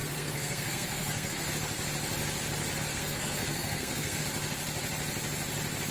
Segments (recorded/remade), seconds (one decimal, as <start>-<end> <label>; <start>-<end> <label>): 0.0-1.5 remade; 1.5-2.9 recorded; 2.9-4.2 remade; 4.2-5.9 recorded